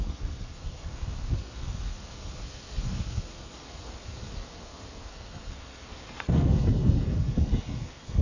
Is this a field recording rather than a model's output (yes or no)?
no